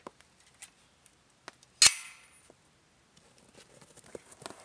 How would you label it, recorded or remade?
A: recorded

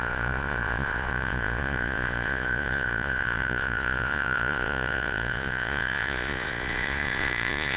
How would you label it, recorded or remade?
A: remade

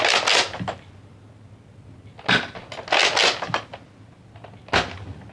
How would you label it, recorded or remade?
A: recorded